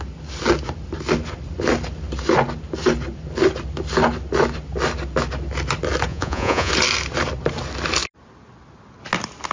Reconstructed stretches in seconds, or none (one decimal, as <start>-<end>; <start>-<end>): 6.1-6.7

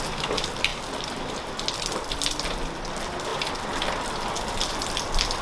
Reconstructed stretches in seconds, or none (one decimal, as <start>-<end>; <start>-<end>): none